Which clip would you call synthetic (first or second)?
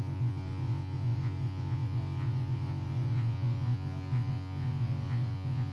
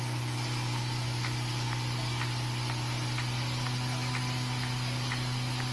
first